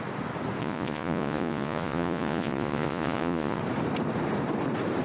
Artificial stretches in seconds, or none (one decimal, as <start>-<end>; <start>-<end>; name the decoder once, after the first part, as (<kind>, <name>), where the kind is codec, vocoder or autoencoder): 0.6-3.6 (vocoder, Vocos)